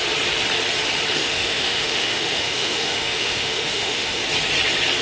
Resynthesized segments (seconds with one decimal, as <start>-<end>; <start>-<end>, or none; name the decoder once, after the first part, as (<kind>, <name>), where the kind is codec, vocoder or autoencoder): 1.2-4.2 (autoencoder, DAC-VAE)